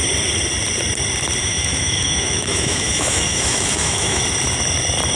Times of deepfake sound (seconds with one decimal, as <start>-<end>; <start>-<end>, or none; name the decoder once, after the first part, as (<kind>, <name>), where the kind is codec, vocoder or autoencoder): 1.4-4.2 (autoencoder, DAC-VAE)